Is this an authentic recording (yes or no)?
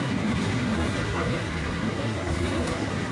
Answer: no